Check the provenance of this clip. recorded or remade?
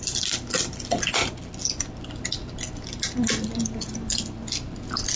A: recorded